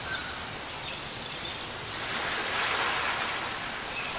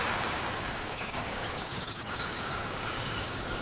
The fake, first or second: second